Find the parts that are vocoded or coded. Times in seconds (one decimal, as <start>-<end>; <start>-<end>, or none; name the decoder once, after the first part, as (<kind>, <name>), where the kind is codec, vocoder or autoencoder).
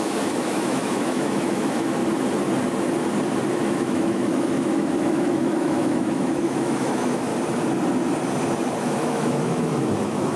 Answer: 0.0-2.0 (autoencoder, DAC-VAE); 3.5-7.3; 8.8-10.4